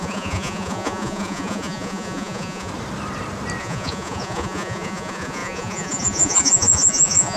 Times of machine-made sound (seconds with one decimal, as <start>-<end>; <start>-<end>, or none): 0.0-2.7; 3.6-7.4